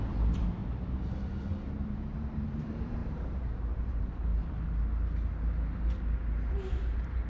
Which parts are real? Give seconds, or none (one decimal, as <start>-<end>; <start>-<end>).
0.6-1.6; 4.3-6.5